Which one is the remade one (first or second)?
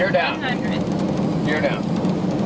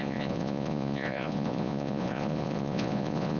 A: second